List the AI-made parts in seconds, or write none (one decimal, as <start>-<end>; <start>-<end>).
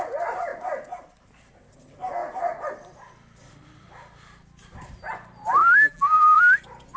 5.6-6.4